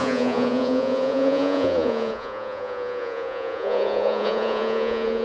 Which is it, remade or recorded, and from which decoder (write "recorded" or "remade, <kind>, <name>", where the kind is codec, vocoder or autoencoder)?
remade, vocoder, Vocos